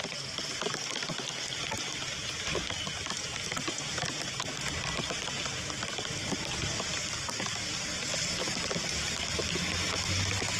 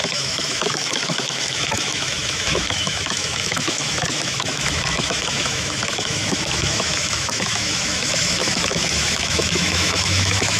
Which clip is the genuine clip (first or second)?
first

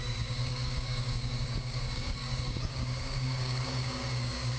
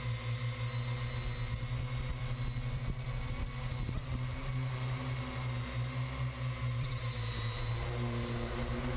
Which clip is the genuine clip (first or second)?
second